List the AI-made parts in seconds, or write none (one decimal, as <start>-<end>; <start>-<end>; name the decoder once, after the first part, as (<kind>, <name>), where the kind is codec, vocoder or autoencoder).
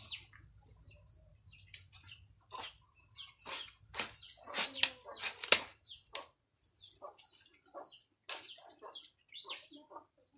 1.3-1.9 (vocoder, BigVGAN v2)